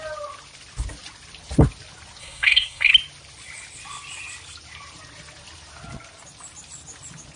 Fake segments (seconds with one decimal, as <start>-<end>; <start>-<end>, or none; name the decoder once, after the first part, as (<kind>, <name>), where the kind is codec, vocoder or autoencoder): 2.2-2.9 (codec, SNAC)